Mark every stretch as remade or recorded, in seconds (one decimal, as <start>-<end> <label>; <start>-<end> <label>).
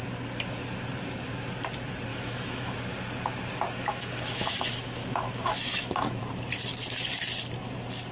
0.0-2.1 recorded; 2.1-2.7 remade; 2.7-3.9 recorded; 3.9-6.2 remade; 6.2-8.1 recorded